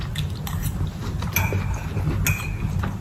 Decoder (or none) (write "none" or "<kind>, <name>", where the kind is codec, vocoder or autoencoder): none